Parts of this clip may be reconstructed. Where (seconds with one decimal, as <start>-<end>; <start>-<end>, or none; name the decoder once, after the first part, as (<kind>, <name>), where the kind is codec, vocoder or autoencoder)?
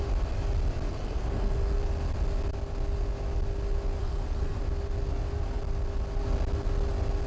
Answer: 0.9-1.8 (codec, SNAC); 4.0-4.6